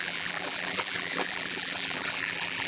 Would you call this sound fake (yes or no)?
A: yes